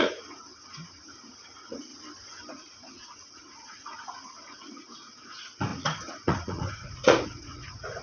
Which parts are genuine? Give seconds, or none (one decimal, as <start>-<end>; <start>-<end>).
1.9-2.5